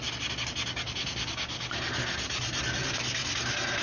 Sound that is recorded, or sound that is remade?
recorded